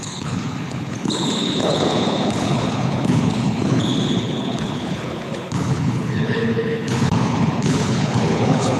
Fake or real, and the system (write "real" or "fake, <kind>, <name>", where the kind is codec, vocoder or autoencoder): fake, codec, HILCodec